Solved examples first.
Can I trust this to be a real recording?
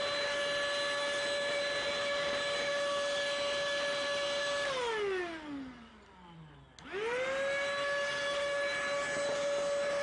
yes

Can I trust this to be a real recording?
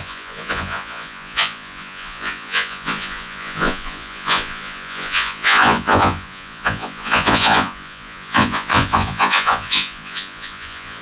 no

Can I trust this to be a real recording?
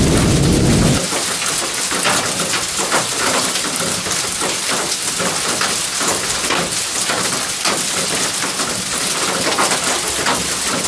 yes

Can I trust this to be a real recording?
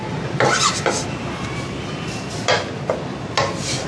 yes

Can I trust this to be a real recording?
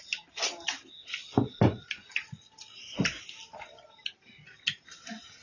yes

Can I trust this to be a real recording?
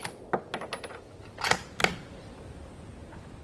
yes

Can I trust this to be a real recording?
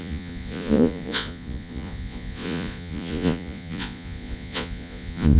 no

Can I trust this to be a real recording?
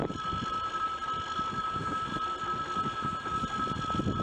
yes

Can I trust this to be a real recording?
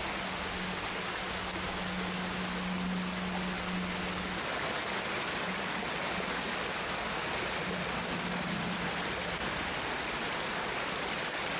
yes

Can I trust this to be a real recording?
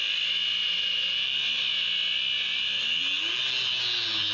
yes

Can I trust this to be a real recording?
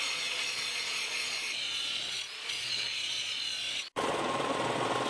no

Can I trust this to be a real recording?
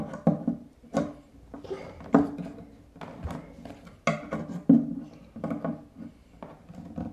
yes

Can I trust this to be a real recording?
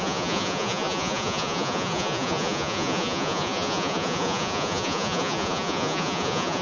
no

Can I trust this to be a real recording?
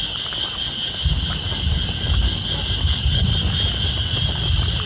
yes